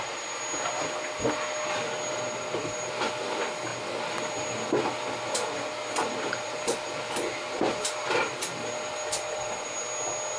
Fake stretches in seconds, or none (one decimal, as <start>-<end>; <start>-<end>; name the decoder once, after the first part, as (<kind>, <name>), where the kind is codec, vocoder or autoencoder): none